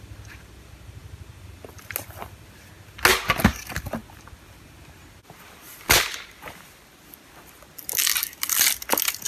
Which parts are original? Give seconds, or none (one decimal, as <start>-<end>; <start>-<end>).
0.0-9.3